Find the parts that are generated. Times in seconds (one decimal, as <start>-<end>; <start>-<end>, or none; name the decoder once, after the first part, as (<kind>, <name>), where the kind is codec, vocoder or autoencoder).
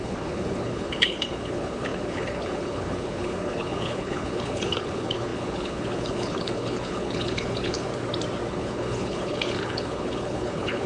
0.0-7.9 (codec, HILCodec); 8.5-10.9